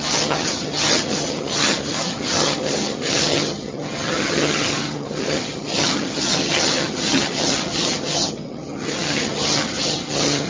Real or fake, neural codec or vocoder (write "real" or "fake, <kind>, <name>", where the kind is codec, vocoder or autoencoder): fake, vocoder, HiFi-GAN